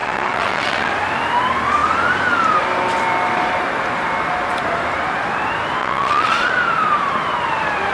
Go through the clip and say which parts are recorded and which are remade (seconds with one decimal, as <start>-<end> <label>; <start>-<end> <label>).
0.0-0.9 remade; 0.9-5.8 recorded; 5.8-6.5 remade; 6.5-7.9 recorded